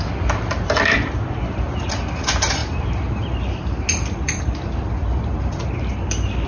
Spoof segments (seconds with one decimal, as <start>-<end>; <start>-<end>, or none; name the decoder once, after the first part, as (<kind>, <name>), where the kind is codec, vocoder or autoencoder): none